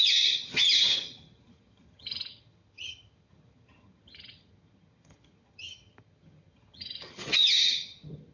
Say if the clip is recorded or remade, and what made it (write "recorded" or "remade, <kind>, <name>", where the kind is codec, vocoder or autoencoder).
remade, vocoder, HiFi-GAN